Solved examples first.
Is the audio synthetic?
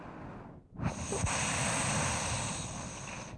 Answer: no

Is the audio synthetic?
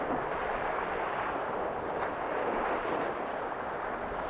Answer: no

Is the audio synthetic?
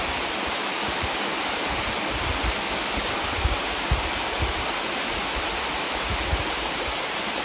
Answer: no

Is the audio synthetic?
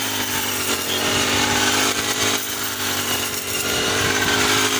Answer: yes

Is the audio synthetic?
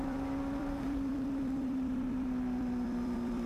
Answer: yes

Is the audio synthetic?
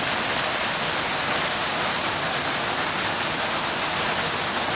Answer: no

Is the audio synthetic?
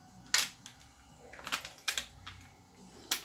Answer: no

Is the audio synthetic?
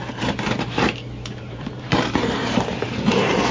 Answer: yes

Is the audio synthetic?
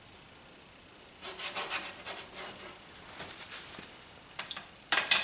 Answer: yes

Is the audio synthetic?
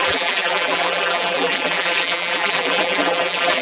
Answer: yes